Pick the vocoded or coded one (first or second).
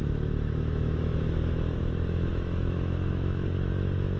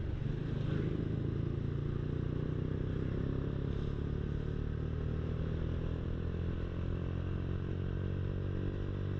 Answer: first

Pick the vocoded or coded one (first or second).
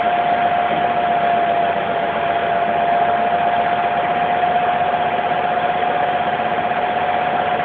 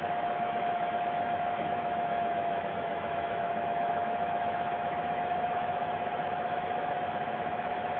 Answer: second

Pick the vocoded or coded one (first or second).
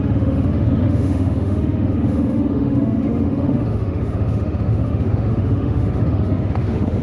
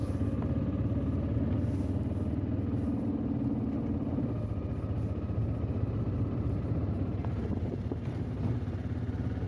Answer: first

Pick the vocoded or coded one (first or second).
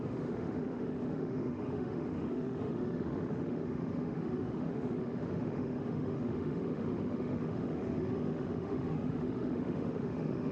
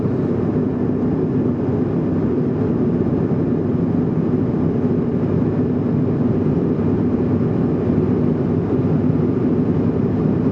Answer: first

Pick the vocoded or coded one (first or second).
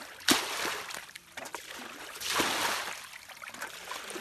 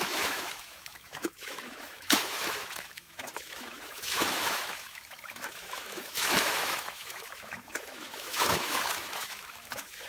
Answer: second